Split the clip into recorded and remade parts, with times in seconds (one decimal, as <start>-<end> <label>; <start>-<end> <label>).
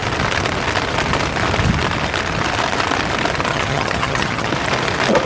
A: 0.0-3.5 recorded; 3.5-4.5 remade; 4.5-5.3 recorded